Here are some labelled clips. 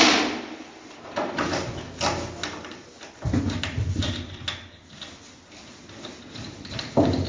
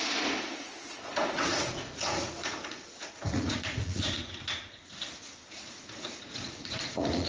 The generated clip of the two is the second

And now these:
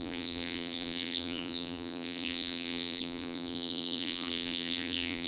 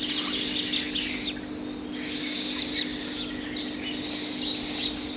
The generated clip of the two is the first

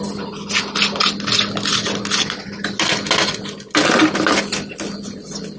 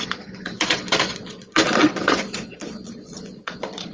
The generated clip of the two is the second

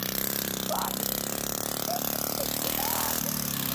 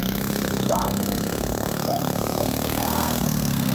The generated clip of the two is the second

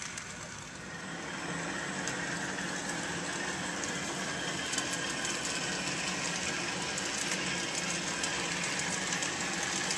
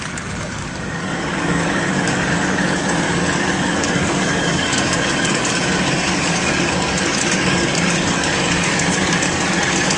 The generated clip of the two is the second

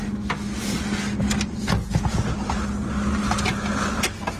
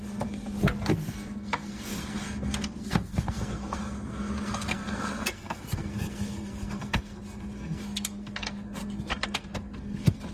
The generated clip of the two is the second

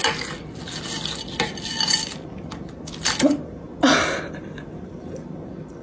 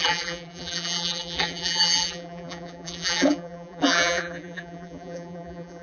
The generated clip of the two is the second